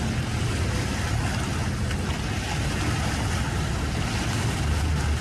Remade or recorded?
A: recorded